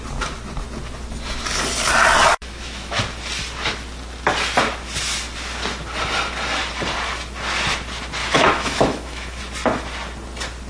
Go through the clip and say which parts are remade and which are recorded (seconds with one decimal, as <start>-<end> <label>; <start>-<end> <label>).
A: 0.0-2.3 recorded; 2.3-3.0 remade; 3.0-8.2 recorded; 8.2-9.4 remade; 9.4-10.7 recorded